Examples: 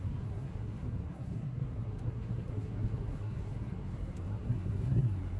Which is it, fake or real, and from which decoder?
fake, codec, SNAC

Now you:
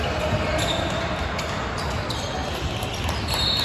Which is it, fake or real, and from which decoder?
real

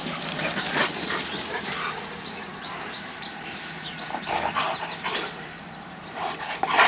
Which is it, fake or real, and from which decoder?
fake, vocoder, BigVGAN v2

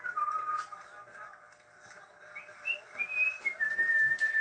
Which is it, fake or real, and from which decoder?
real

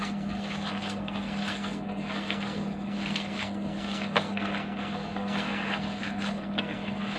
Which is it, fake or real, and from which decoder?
fake, codec, SNAC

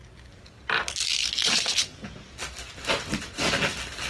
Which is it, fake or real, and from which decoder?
real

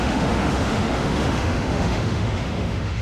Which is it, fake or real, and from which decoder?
fake, autoencoder, DAC-VAE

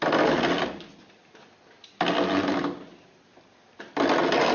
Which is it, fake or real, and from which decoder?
real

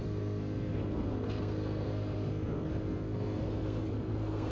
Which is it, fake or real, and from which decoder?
fake, codec, SNAC